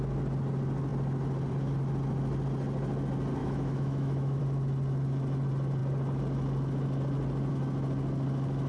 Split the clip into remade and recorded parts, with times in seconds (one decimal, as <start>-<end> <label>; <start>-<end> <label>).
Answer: 0.0-3.4 recorded; 3.4-4.4 remade; 4.4-8.7 recorded